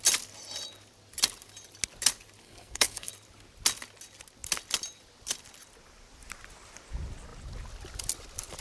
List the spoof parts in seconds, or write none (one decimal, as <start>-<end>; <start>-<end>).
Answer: 2.4-3.1